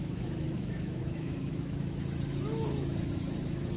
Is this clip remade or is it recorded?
remade